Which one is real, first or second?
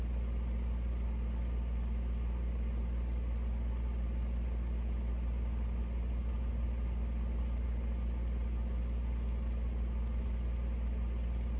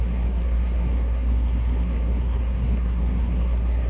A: first